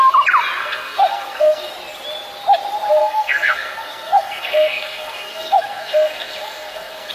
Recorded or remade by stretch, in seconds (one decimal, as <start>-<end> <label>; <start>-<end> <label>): 0.0-0.6 recorded; 0.6-1.7 remade; 1.7-3.0 recorded; 3.0-7.1 remade